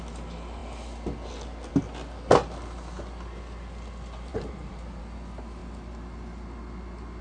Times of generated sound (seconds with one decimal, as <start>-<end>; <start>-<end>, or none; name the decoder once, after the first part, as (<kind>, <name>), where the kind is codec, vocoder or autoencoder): 4.3-5.0 (vocoder, BigVGAN v2)